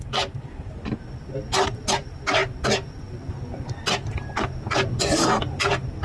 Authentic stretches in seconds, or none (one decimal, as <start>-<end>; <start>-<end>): 0.0-6.0